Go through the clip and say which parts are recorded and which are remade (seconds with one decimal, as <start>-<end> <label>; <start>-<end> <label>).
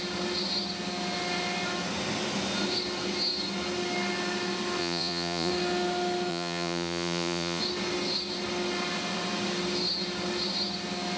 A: 0.0-4.8 recorded; 4.8-5.5 remade; 5.5-6.3 recorded; 6.3-7.6 remade; 7.6-11.2 recorded